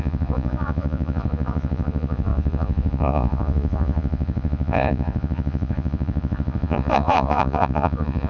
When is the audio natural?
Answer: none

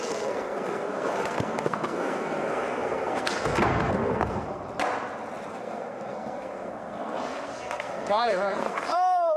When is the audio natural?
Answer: 4.6-5.5

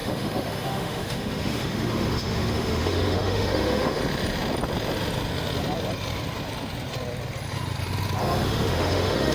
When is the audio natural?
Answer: 4.0-8.2

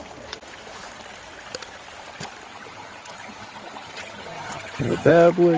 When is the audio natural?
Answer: 0.0-2.5; 5.1-5.6